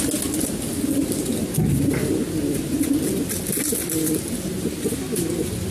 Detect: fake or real real